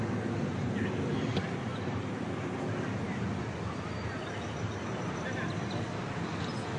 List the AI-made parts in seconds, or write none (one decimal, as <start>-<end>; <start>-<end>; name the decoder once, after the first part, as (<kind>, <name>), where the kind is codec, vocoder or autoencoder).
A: 1.7-2.3 (vocoder, BigVGAN v2)